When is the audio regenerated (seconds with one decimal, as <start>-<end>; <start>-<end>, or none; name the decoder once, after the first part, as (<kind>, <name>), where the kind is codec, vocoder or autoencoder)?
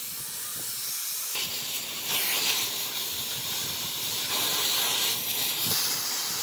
none